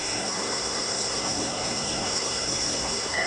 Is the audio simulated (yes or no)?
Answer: yes